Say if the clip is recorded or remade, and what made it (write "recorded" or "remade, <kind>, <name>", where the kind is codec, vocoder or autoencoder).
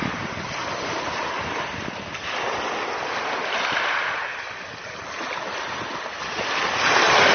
remade, vocoder, BigVGAN v2